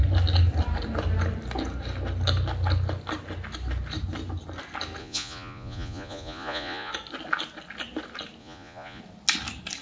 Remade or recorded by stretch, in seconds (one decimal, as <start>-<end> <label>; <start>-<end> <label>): 0.0-5.0 recorded; 5.0-6.9 remade; 6.9-8.4 recorded; 8.4-9.0 remade; 9.0-9.8 recorded